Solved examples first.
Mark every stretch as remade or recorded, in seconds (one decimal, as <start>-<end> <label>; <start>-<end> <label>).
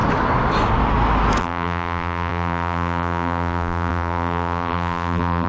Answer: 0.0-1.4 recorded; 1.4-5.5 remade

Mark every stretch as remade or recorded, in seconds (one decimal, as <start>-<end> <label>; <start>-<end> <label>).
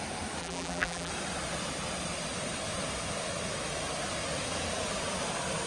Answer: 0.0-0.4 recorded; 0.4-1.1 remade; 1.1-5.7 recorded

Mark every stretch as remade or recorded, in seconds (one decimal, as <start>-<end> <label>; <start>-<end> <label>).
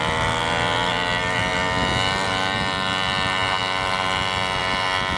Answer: 0.0-5.2 recorded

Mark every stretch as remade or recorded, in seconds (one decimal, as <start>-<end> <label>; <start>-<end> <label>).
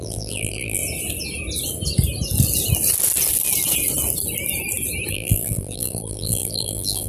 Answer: 0.0-0.8 remade; 0.8-5.1 recorded; 5.1-7.1 remade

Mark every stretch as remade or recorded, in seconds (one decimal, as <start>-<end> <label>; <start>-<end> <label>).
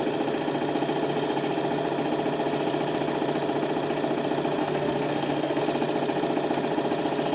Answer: 0.0-4.6 recorded; 4.6-5.6 remade; 5.6-7.3 recorded